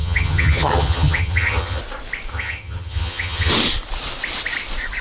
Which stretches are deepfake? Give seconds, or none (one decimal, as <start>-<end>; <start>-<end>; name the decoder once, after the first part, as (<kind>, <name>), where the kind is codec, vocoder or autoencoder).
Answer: 0.0-1.8 (vocoder, HiFi-GAN); 2.3-3.5